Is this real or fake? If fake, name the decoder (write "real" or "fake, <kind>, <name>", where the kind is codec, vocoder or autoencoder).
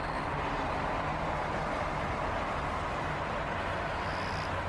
real